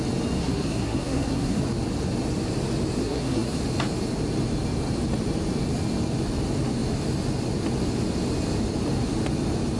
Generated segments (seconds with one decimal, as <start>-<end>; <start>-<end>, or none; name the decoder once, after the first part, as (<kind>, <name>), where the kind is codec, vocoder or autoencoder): 0.4-1.6 (codec, SNAC); 3.0-3.6